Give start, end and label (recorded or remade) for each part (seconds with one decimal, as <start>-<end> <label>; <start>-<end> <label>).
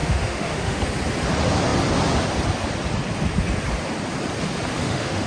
0.0-0.8 remade; 0.8-4.7 recorded; 4.7-5.3 remade